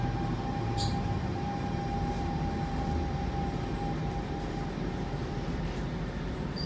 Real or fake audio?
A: fake